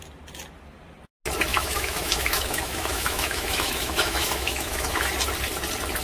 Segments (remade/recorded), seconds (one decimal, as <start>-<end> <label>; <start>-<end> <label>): 0.0-1.5 recorded; 1.5-5.1 remade; 5.1-6.0 recorded